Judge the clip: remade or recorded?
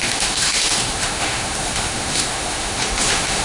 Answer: remade